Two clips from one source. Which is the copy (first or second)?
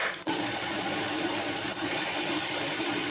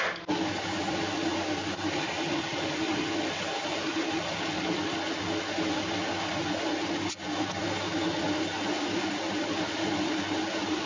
first